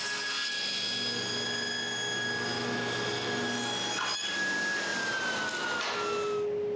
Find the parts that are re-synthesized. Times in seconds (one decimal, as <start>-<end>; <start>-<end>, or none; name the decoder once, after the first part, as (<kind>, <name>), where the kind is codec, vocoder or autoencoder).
none